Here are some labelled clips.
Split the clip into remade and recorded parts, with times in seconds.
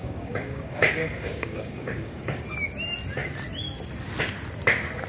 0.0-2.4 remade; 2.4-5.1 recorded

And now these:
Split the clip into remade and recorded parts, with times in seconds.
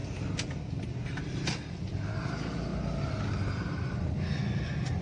0.0-5.0 recorded